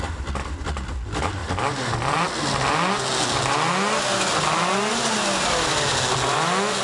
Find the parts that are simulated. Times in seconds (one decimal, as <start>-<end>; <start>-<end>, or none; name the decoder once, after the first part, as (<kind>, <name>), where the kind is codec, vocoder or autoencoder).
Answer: none